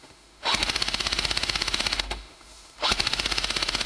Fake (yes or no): yes